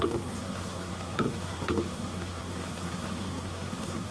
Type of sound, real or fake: fake